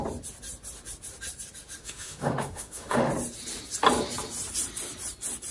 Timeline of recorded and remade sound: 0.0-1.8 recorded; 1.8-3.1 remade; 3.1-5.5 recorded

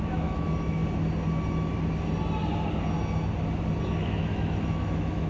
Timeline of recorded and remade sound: 0.0-0.8 remade; 0.8-4.0 recorded; 4.0-5.3 remade

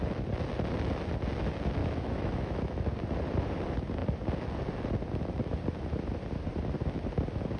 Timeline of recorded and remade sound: 0.0-1.8 recorded; 1.8-2.9 remade; 2.9-7.6 recorded

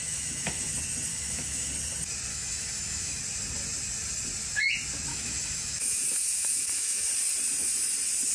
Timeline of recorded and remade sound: 0.0-0.7 remade; 0.7-1.1 recorded; 1.1-1.7 remade; 1.7-2.3 recorded; 2.3-3.2 remade; 3.2-5.1 recorded; 5.1-7.1 remade; 7.1-8.3 recorded

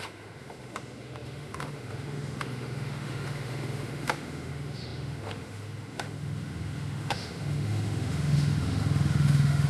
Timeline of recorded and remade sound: 0.0-9.7 remade

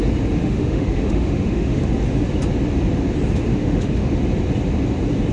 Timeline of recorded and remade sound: 0.0-0.4 recorded; 0.4-1.8 remade; 1.8-3.5 recorded; 3.5-4.1 remade; 4.1-5.3 recorded